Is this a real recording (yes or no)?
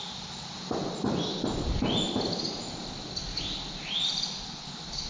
yes